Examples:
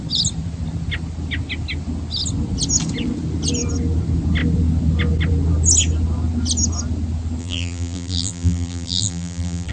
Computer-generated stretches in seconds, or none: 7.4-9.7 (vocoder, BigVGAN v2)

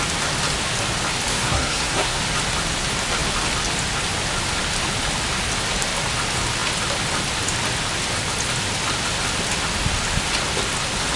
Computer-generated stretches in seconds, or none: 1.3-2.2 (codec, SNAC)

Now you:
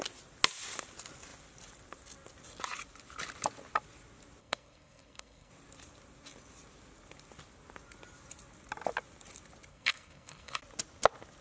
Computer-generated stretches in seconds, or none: 4.4-5.5 (codec, SNAC); 9.7-10.6

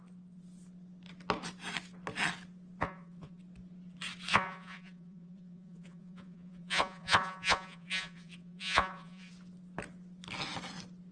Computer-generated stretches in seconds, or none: 2.8-3.4 (vocoder, Vocos); 4.3-9.3

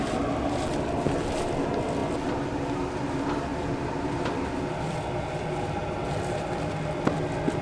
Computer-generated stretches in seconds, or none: 2.0-2.6 (vocoder, BigVGAN v2); 3.5-4.6